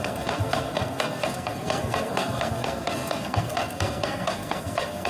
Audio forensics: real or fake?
fake